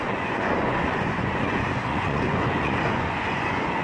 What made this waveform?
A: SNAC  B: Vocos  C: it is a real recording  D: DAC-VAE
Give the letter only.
B